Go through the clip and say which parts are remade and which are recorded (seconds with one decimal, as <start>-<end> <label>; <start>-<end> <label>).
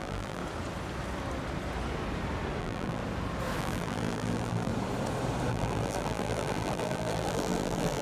0.0-0.4 remade; 0.4-2.6 recorded; 2.6-3.0 remade; 3.0-3.6 recorded; 3.6-4.7 remade; 4.7-5.5 recorded; 5.5-8.0 remade